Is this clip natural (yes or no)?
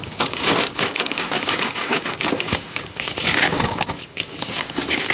no